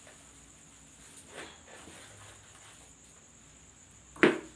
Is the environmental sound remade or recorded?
recorded